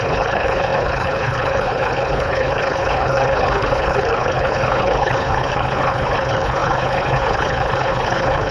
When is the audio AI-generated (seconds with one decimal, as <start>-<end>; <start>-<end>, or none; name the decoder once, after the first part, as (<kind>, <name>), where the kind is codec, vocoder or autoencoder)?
0.0-8.5 (codec, HILCodec)